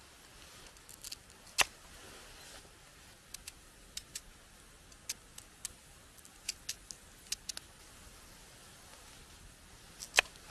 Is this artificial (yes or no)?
no